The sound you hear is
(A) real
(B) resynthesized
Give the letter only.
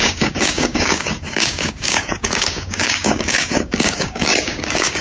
B